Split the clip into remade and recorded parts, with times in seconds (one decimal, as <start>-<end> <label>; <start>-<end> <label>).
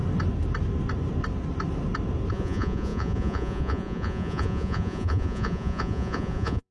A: 0.0-2.3 recorded; 2.3-6.7 remade